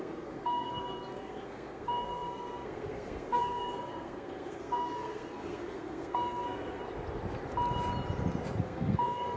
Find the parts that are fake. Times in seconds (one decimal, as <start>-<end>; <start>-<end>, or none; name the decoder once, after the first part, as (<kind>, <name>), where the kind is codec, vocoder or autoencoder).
0.0-6.8 (codec, SNAC); 8.6-9.4